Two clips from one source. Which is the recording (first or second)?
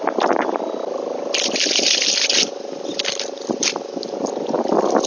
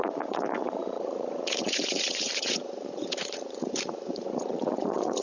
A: first